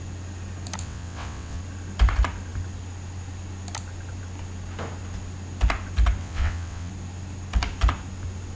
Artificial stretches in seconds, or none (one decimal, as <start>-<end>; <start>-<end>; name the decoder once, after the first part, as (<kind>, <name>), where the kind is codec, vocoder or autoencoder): 0.8-1.6 (vocoder, WaveNeXt); 6.2-6.9